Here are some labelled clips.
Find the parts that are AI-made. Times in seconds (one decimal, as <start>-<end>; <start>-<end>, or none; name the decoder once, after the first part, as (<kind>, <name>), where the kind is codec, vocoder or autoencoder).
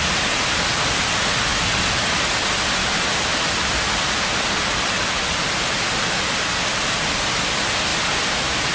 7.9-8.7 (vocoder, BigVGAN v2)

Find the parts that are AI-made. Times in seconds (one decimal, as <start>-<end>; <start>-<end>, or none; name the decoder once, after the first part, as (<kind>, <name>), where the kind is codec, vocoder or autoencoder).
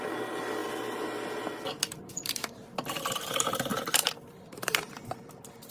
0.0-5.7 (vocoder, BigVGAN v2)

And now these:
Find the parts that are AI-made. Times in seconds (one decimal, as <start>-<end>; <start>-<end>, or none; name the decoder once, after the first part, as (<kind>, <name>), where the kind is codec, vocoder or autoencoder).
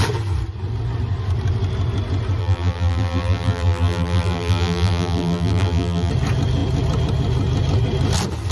2.4-6.1 (vocoder, BigVGAN v2)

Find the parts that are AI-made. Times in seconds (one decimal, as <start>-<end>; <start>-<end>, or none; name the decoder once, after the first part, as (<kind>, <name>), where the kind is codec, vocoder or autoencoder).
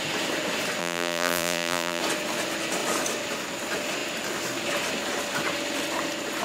0.8-2.0 (vocoder, BigVGAN v2)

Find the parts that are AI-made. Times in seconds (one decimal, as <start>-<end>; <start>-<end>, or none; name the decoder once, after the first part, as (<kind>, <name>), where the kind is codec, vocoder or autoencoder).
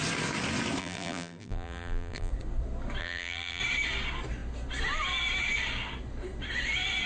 0.8-2.3 (vocoder, BigVGAN v2); 3.0-3.6